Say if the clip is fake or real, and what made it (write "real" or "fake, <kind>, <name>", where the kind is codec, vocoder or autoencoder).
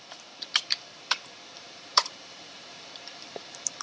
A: fake, vocoder, BigVGAN v2